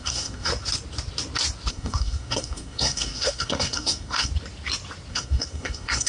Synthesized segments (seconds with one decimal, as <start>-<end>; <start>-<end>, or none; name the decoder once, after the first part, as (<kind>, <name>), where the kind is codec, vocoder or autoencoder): 0.0-0.5 (codec, SNAC); 1.7-4.3; 5.1-6.1